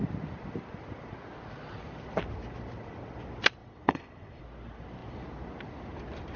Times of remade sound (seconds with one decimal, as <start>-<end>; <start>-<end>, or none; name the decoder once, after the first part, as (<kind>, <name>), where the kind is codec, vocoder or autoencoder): 3.6-4.4 (vocoder, WaveNeXt)